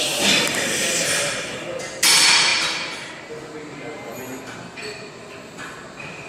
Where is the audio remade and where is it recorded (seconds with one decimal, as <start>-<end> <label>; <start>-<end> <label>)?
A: 0.0-6.3 recorded

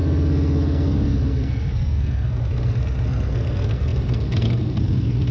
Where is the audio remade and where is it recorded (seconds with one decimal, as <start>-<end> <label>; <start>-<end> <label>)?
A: 0.0-5.3 remade

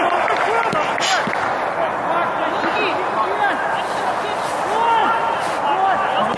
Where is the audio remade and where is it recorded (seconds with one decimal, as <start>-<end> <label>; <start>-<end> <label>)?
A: 0.0-6.4 recorded